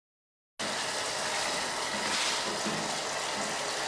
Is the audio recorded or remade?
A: recorded